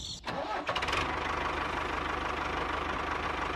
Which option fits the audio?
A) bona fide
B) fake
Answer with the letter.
A